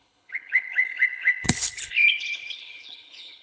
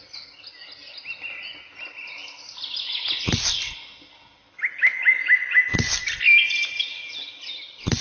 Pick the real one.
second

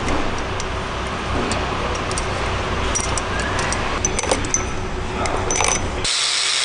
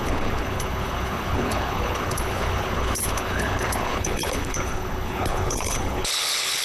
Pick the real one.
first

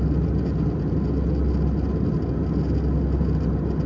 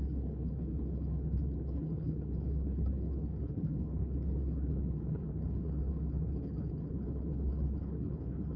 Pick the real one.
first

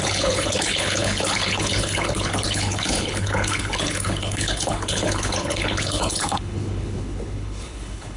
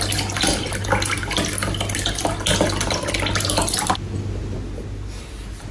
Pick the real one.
second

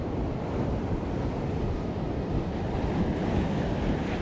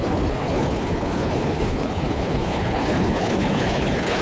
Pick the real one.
first